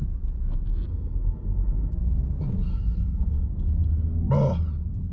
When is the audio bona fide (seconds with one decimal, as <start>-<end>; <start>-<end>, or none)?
0.0-0.9; 1.9-2.7; 3.5-5.1